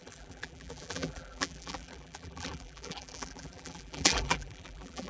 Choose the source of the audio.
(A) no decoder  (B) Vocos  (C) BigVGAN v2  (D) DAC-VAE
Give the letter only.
C